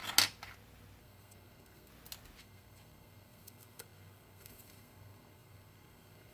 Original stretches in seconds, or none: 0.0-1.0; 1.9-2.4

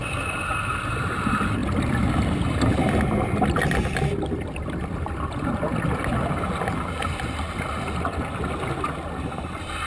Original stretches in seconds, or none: 0.0-9.9

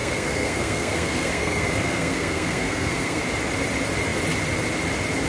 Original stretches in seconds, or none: 3.2-5.3

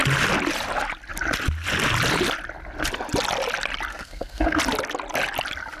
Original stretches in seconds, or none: 0.0-3.9; 4.6-5.8

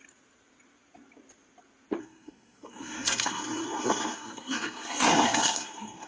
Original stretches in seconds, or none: 0.0-2.0

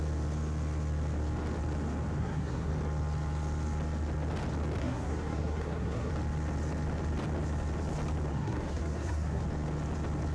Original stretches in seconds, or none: 0.0-2.2; 2.7-4.8; 6.1-8.3; 9.4-10.3

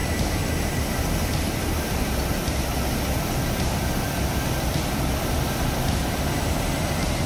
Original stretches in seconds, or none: 0.0-7.3

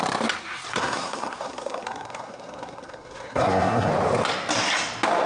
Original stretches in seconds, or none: 0.0-0.7; 3.9-5.3